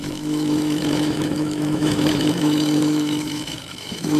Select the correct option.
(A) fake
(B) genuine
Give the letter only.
A